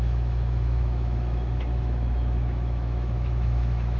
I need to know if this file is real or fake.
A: fake